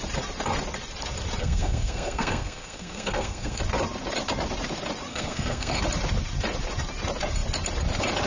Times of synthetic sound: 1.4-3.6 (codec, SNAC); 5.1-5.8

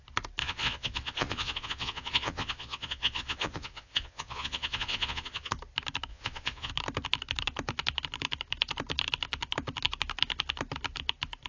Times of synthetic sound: 0.4-5.5 (vocoder, Vocos); 6.1-6.7

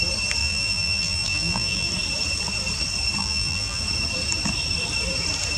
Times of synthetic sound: 0.4-1.9 (vocoder, BigVGAN v2); 3.2-3.8

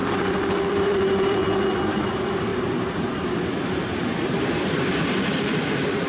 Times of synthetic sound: 0.0-1.4 (vocoder, BigVGAN v2); 1.9-2.5; 3.0-6.1

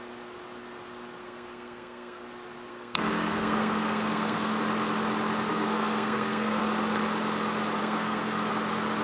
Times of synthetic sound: 1.2-2.2 (codec, SNAC); 2.7-4.6; 5.5-6.6; 7.8-8.5